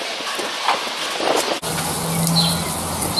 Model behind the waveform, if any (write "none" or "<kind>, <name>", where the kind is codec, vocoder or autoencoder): none